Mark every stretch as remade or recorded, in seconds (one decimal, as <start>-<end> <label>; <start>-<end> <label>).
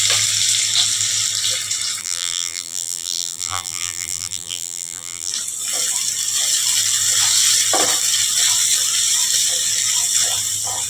0.0-2.0 recorded; 2.0-5.3 remade; 5.3-10.9 recorded